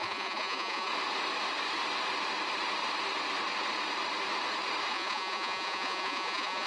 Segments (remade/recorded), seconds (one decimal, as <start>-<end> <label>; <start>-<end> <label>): 0.0-0.9 remade; 0.9-4.9 recorded; 4.9-6.7 remade